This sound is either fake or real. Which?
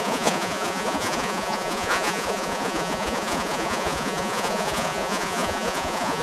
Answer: fake